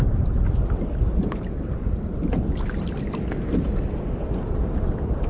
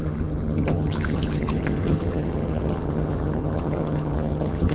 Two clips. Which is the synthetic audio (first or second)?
second